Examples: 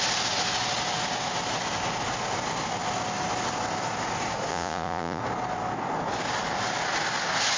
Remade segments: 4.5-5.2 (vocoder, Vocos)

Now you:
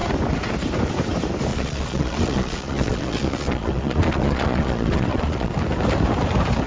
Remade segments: 1.5-5.5 (vocoder, Vocos)

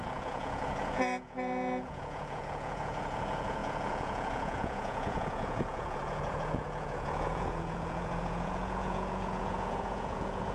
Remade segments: 0.0-10.5 (vocoder, Vocos)

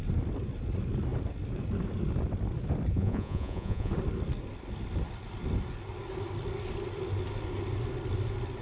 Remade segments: 2.9-3.9 (vocoder, Vocos)

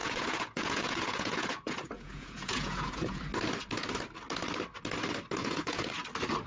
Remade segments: 0.0-3.2 (vocoder, Vocos); 5.4-5.9

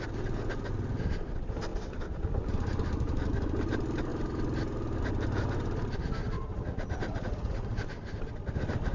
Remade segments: 6.2-7.7 (vocoder, Vocos)